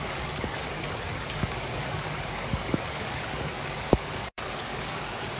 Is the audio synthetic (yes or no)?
yes